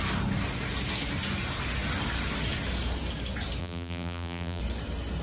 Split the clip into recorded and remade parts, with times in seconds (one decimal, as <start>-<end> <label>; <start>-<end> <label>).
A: 0.0-3.6 recorded; 3.6-4.6 remade; 4.6-5.2 recorded